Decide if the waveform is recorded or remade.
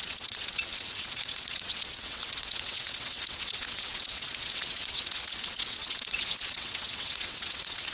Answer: remade